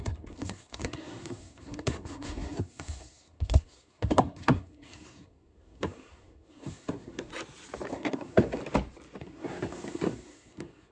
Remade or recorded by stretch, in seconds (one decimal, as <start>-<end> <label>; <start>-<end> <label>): 0.0-7.3 remade; 7.3-7.9 recorded; 7.9-8.6 remade; 8.6-9.2 recorded; 9.2-10.9 remade